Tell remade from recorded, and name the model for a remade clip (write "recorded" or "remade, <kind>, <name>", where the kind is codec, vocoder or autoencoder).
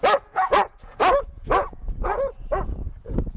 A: remade, vocoder, Vocos